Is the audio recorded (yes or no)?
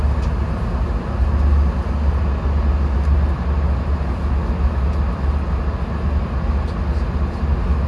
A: yes